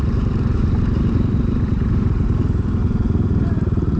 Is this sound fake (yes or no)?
yes